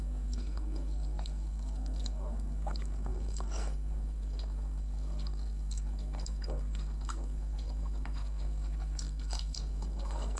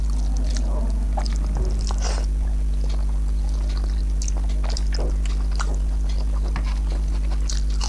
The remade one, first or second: first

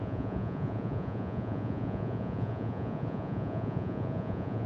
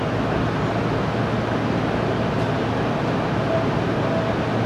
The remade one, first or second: first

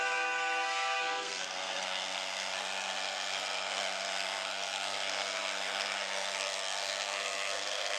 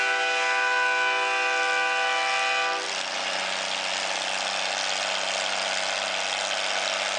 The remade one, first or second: first